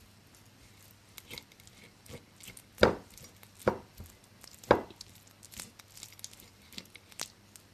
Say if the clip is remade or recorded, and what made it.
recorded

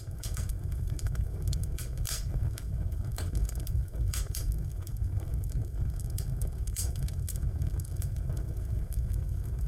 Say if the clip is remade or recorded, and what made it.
remade, codec, SNAC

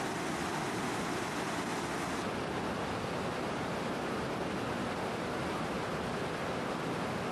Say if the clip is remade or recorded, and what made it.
recorded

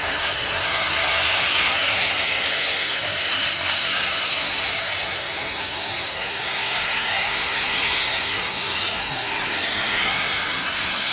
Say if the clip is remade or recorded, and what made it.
remade, codec, SNAC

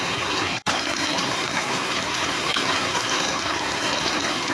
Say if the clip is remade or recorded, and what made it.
remade, codec, SNAC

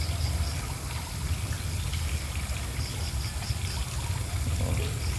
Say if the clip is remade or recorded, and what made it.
recorded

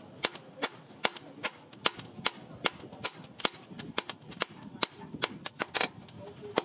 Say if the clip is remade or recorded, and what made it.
recorded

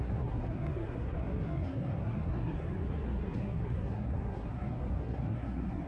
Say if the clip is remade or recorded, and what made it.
remade, codec, SNAC